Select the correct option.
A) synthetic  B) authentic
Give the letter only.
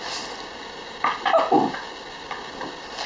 B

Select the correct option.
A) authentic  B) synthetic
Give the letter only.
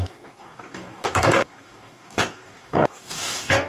B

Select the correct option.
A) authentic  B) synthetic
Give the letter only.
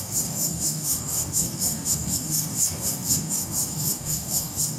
B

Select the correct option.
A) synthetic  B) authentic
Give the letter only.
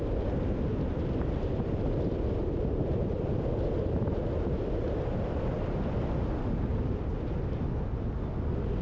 B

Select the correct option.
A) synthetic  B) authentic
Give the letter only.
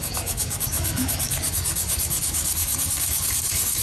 A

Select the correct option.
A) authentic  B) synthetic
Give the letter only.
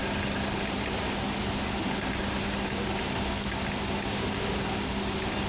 A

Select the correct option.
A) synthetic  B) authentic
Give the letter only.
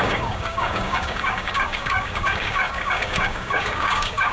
A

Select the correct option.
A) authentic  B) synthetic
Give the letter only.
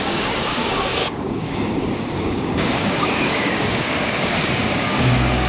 B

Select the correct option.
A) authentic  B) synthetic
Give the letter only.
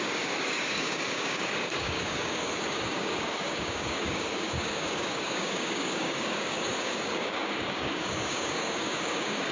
B